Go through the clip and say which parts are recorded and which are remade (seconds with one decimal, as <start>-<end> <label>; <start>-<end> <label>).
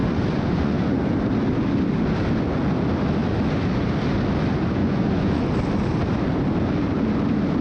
0.0-1.0 remade; 1.0-4.8 recorded; 4.8-5.5 remade; 5.5-7.6 recorded